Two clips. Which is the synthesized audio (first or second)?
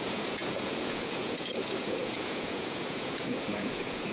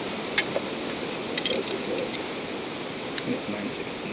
first